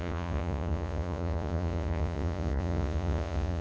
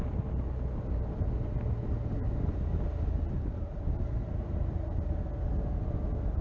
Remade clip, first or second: first